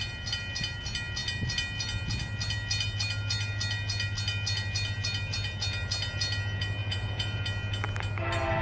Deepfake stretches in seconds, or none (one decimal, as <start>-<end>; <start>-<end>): 6.8-7.4